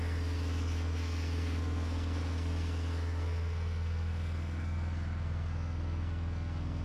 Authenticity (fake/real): fake